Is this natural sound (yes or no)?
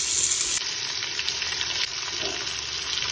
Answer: yes